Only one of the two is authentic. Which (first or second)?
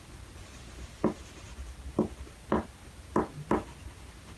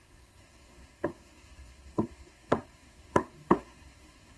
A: first